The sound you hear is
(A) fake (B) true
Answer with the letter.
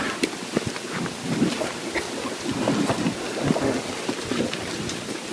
B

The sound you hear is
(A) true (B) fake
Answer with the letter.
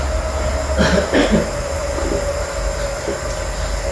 A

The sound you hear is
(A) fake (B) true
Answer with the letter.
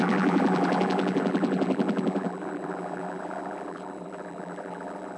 A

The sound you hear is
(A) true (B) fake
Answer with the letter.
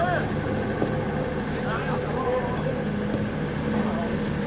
A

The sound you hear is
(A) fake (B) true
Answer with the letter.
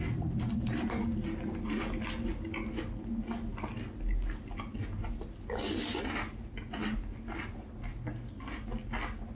B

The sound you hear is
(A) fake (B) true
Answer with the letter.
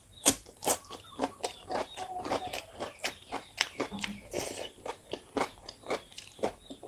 A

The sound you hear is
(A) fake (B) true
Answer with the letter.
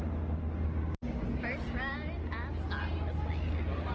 B